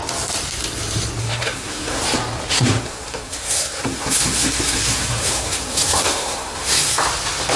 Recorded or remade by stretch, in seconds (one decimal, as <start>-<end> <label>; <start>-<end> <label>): 0.0-1.2 recorded; 1.2-2.0 remade; 2.0-2.5 recorded; 2.5-7.0 remade; 7.0-7.6 recorded